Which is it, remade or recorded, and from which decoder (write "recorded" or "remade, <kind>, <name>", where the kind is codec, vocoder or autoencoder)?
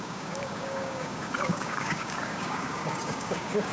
remade, codec, DAC